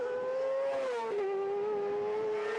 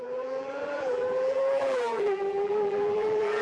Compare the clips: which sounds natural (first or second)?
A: first